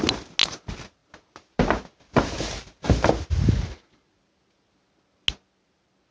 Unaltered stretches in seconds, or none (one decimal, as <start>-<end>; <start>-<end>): 0.0-6.1

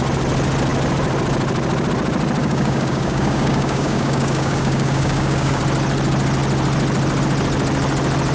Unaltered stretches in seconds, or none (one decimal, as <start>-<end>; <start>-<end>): 0.0-2.4; 5.6-8.3

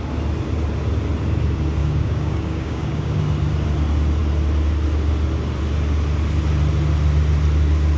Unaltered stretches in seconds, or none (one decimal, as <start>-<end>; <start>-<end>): 0.0-1.8; 3.2-8.0